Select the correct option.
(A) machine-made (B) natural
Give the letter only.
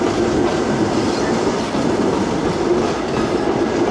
B